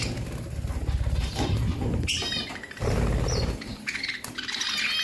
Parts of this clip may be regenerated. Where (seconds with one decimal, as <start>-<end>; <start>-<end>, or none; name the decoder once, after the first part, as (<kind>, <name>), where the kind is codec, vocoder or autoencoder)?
none